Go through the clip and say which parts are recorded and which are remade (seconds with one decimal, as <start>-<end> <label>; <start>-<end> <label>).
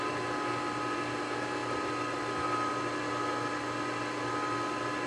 0.0-5.1 recorded